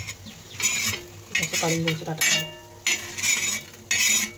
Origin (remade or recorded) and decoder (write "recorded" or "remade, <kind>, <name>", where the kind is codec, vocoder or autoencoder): recorded